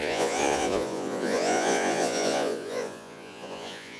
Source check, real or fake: fake